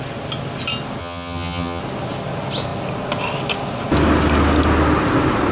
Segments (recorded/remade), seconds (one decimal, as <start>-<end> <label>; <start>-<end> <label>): 0.0-1.0 recorded; 1.0-1.8 remade; 1.8-5.5 recorded